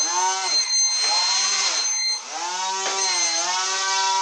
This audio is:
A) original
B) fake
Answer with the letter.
A